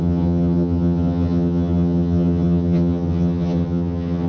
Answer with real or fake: fake